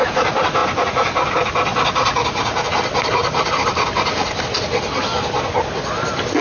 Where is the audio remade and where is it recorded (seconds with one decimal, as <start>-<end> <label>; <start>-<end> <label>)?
0.0-6.4 recorded

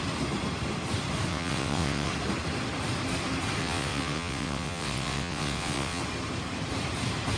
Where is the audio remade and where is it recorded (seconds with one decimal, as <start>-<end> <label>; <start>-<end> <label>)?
0.0-1.3 recorded; 1.3-2.1 remade; 2.1-3.6 recorded; 3.6-6.0 remade; 6.0-7.4 recorded